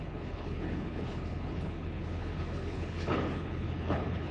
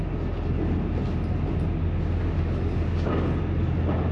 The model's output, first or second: first